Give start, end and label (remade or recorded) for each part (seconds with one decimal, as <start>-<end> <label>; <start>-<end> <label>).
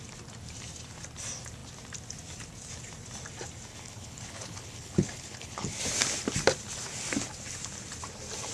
0.0-3.7 recorded; 3.7-5.8 remade; 5.8-8.5 recorded